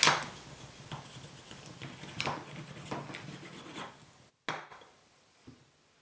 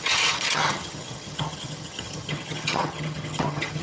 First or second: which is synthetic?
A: second